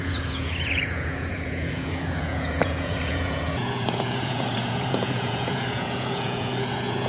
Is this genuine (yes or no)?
no